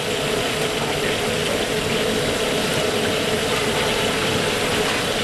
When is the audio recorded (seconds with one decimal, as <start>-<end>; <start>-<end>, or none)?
0.0-5.2